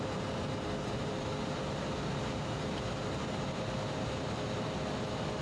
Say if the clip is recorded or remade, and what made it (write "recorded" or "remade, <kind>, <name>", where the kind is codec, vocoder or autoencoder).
recorded